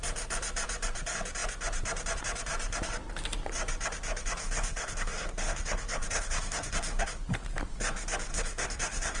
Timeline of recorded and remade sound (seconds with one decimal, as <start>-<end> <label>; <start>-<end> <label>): 0.0-4.4 recorded; 4.4-7.2 remade; 7.2-8.3 recorded; 8.3-9.2 remade